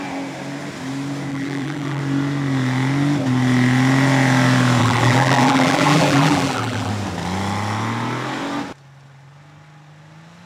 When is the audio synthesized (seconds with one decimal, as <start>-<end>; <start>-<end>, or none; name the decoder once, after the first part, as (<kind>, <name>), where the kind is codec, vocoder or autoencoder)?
1.3-2.0 (vocoder, BigVGAN v2); 4.8-6.9